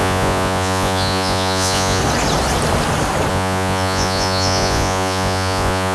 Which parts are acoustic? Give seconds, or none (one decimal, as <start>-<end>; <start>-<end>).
2.0-3.3